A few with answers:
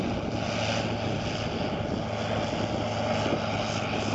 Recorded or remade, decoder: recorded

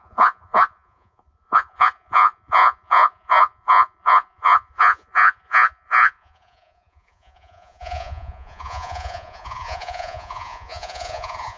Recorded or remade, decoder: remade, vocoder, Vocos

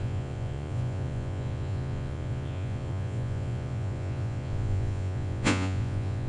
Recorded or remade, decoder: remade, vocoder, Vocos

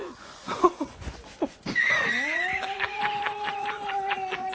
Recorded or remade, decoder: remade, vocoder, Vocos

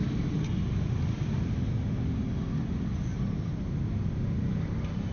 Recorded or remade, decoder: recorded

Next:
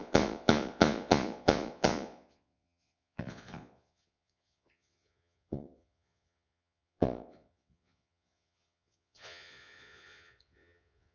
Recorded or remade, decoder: remade, vocoder, Vocos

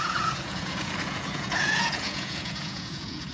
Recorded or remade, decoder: remade, vocoder, Vocos